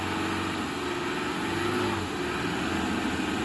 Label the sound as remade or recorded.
recorded